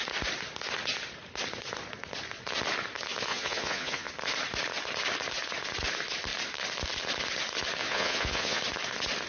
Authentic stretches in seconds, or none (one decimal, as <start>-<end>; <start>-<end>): 0.0-3.3; 4.1-7.8; 8.6-9.3